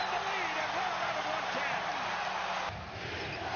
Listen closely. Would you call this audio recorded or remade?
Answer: recorded